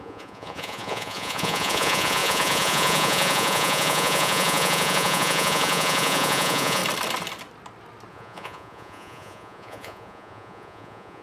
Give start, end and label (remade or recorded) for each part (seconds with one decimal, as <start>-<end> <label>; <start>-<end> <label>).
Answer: 0.0-6.8 remade; 6.8-8.1 recorded; 8.1-11.2 remade

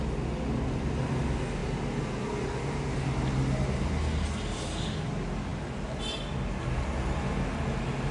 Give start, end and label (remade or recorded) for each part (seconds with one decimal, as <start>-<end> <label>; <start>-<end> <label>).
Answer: 0.0-8.1 recorded

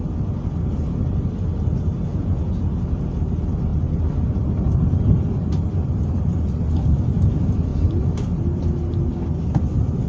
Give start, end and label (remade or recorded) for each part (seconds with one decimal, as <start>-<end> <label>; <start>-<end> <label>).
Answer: 0.0-2.1 recorded; 2.1-2.7 remade; 2.7-10.1 recorded

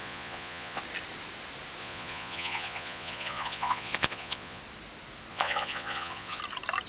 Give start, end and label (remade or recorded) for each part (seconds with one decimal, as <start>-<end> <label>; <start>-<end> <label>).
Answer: 0.0-0.8 remade; 0.8-1.8 recorded; 1.8-4.6 remade; 4.6-5.3 recorded; 5.3-6.4 remade; 6.4-6.9 recorded